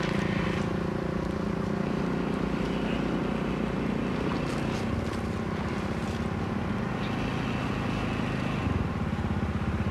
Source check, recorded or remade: recorded